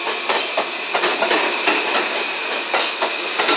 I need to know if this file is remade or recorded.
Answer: recorded